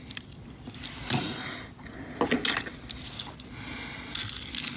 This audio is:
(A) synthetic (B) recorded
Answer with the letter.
B